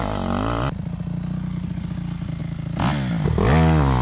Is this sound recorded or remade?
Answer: recorded